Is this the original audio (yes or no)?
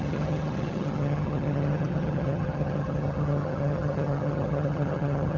no